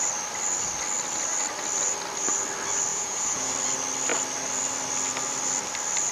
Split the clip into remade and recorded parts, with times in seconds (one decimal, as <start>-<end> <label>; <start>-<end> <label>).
0.0-2.9 recorded; 2.9-3.5 remade; 3.5-6.1 recorded